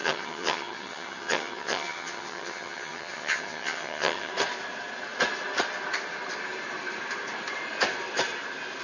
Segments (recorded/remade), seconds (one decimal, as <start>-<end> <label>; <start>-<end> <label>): 0.0-4.3 remade; 4.3-8.8 recorded